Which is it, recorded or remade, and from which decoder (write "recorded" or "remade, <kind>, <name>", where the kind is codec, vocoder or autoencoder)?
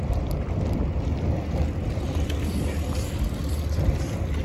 remade, vocoder, BigVGAN v2